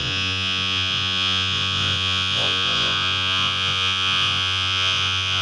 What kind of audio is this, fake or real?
fake